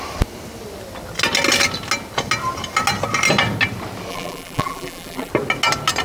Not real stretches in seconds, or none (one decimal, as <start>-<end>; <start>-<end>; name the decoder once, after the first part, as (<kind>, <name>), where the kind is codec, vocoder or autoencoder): 4.1-5.3 (vocoder, BigVGAN v2)